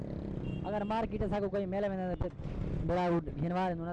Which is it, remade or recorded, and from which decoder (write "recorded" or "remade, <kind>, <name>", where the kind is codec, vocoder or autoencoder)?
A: recorded